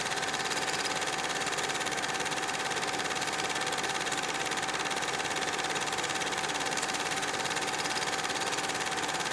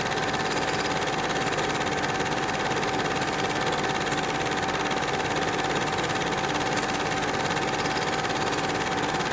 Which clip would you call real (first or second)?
second